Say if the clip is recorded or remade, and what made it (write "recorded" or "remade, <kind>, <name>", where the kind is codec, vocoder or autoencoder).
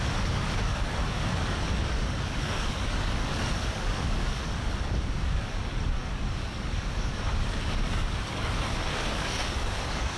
remade, codec, DAC